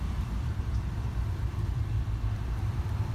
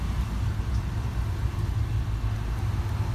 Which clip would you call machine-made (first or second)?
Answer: first